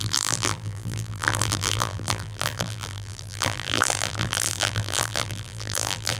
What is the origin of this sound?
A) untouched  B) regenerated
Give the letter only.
B